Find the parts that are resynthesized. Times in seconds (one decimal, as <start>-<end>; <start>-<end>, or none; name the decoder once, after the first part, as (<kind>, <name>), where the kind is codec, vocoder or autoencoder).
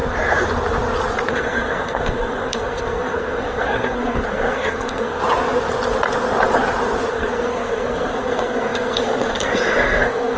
1.3-5.2 (codec, SNAC); 7.1-10.4